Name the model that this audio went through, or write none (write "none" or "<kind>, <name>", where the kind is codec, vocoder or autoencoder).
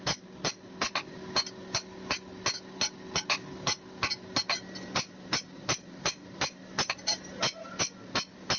none